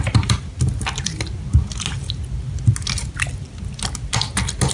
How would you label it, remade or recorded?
recorded